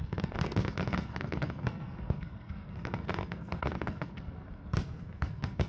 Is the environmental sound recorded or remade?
remade